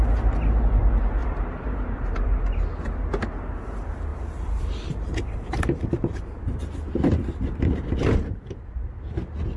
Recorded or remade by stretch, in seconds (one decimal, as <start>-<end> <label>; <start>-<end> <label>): 0.0-1.2 recorded; 1.2-2.5 remade; 2.5-4.1 recorded; 4.1-6.3 remade; 6.3-9.6 recorded